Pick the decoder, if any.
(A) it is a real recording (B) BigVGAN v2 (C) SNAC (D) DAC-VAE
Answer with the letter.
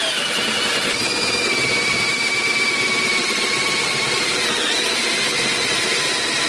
A